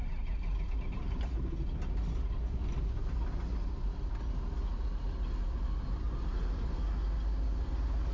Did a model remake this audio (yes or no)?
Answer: no